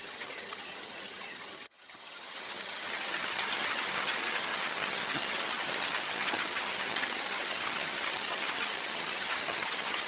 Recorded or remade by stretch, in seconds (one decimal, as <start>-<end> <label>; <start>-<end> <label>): 0.0-10.1 remade

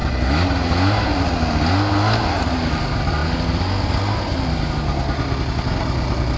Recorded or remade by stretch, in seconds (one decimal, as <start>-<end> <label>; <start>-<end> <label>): 0.0-6.4 recorded

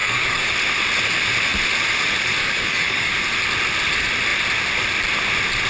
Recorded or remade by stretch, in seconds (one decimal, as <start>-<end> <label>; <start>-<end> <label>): 0.0-0.5 remade; 0.5-2.4 recorded; 2.4-3.1 remade; 3.1-5.7 recorded

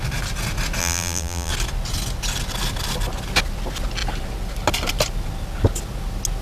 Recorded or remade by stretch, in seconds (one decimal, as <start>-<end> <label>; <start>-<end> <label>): 0.0-0.8 recorded; 0.8-1.5 remade; 1.5-6.4 recorded

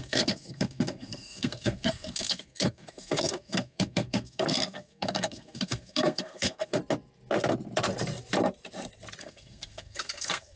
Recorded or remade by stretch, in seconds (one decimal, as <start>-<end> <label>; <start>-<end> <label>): 0.0-6.8 remade; 6.8-9.2 recorded; 9.2-10.6 remade

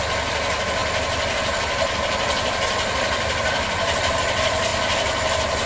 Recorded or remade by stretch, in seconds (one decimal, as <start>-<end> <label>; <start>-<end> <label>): 0.0-0.8 recorded; 0.8-4.2 remade; 4.2-5.7 recorded

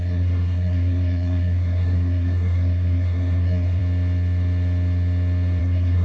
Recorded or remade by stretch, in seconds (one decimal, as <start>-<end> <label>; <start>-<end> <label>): 0.0-3.8 remade; 3.8-5.6 recorded; 5.6-6.0 remade

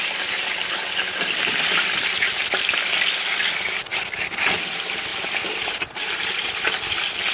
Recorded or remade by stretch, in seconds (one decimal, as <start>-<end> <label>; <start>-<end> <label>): 0.0-5.1 recorded; 5.1-5.6 remade; 5.6-7.3 recorded